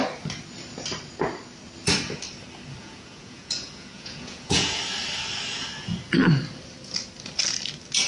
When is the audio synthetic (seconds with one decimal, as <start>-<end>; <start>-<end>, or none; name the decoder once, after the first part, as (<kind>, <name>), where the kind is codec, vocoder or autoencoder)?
2.8-4.8 (vocoder, Vocos)